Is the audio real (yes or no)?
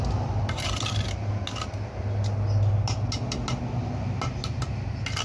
yes